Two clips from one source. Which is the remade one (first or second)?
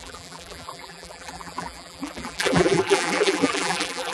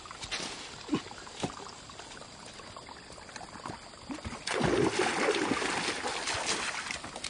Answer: first